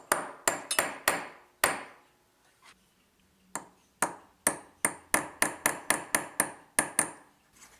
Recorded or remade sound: recorded